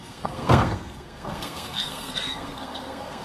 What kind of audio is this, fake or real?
fake